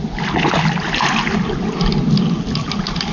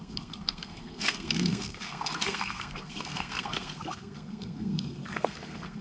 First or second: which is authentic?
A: first